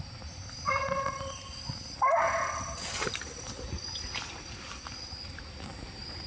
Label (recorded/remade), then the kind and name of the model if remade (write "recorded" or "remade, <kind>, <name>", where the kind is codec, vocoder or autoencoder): recorded